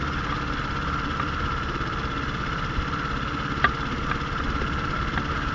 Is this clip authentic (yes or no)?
yes